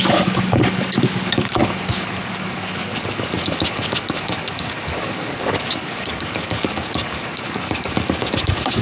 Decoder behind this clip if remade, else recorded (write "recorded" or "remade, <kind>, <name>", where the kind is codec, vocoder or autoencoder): remade, codec, DAC